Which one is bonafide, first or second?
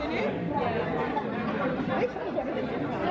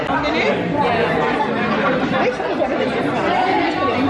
second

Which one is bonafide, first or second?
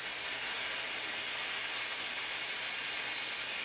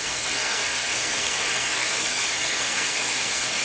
first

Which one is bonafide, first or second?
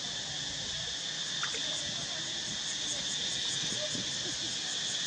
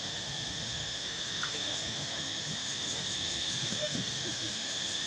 first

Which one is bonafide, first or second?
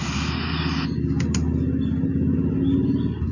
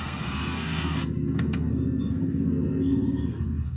first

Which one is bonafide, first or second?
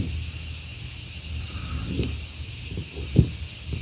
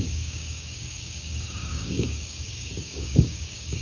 first